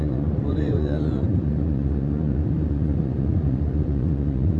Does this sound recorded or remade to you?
remade